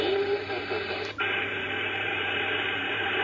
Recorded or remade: remade